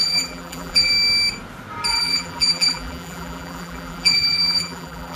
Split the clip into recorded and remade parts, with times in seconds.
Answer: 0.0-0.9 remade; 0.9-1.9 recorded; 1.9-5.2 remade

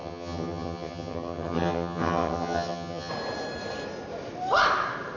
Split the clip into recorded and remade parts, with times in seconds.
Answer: 0.0-3.1 remade; 3.1-5.2 recorded

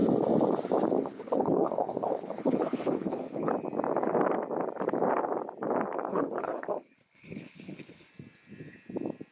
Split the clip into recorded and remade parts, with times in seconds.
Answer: 0.0-1.0 recorded; 1.0-3.5 remade; 3.5-6.1 recorded; 6.1-8.1 remade; 8.1-9.3 recorded